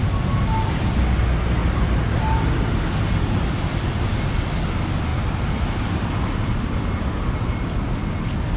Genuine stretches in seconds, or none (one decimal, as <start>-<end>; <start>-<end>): 0.0-1.6; 2.4-8.6